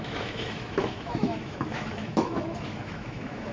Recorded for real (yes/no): no